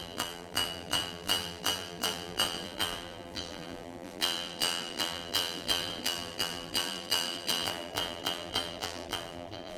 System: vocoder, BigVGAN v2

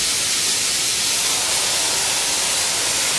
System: none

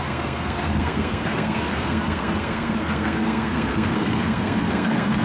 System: codec, SNAC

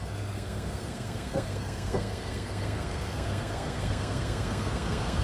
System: codec, SNAC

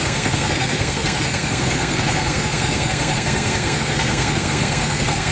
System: codec, SNAC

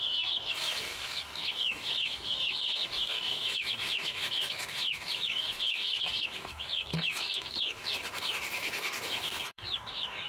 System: codec, DAC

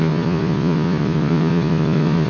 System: vocoder, Vocos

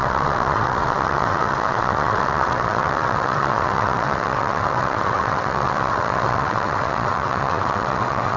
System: vocoder, WaveNeXt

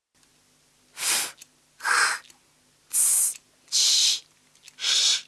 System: none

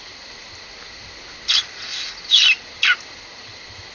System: none